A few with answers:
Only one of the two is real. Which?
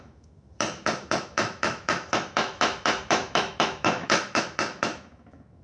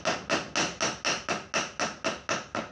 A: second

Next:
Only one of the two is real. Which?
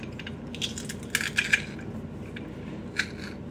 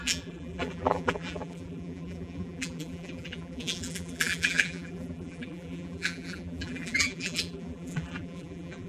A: first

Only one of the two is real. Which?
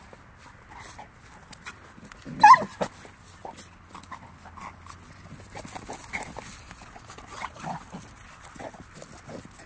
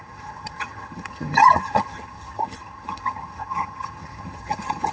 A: first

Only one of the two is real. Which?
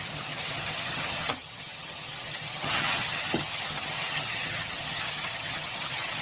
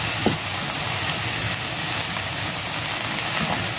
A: second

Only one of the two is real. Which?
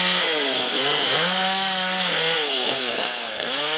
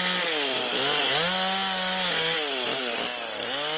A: second